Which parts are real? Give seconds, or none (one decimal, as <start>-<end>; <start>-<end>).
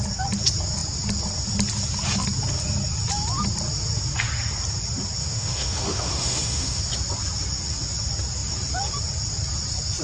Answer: 0.0-5.2; 6.8-10.0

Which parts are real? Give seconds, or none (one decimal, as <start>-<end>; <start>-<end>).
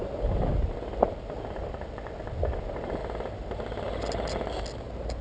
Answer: 0.0-5.2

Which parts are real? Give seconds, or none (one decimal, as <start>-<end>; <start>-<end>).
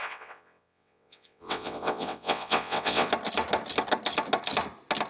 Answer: 3.1-5.1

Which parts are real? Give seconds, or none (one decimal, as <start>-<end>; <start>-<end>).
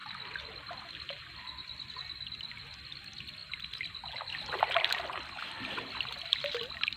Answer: 0.0-7.0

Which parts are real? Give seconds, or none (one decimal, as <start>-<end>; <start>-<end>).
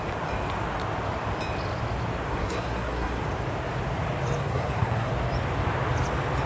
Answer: 0.0-2.3; 3.2-4.4; 5.1-6.5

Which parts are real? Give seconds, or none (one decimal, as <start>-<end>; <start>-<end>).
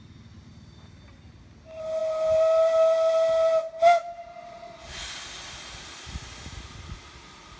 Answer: 0.0-7.6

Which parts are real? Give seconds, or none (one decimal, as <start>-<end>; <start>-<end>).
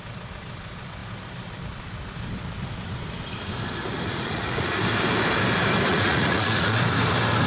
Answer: 0.0-3.9; 4.8-5.9; 6.8-7.5